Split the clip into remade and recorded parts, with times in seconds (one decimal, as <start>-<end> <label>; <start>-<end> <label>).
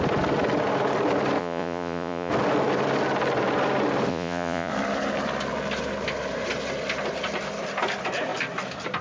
0.0-1.4 recorded; 1.4-2.3 remade; 2.3-4.1 recorded; 4.1-4.7 remade; 4.7-9.0 recorded